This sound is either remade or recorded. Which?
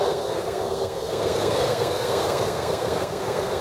remade